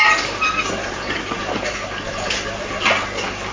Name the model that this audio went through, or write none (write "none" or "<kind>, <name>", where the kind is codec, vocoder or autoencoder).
none